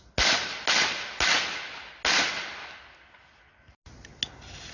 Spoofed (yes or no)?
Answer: no